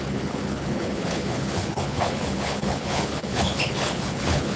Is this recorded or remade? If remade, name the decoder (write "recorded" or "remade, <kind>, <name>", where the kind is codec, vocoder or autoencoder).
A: remade, codec, HILCodec